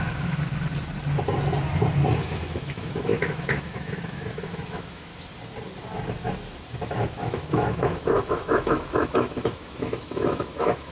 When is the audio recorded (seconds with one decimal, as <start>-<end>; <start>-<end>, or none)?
0.6-2.2; 5.1-7.0